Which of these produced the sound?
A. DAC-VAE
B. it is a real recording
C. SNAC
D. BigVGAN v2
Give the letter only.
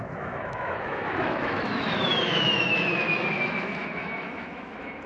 A